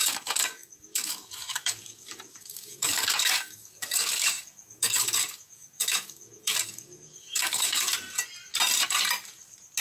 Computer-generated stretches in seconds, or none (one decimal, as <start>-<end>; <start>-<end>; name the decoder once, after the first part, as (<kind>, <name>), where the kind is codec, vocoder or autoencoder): 0.0-7.9 (codec, DAC)